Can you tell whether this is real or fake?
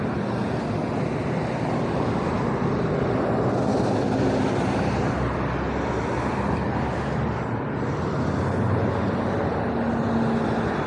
real